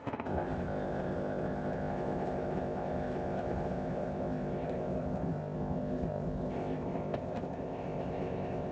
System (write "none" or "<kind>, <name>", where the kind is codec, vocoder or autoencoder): codec, ZipCodec